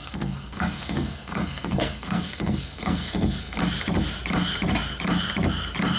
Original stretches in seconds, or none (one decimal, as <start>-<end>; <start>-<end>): 3.6-6.0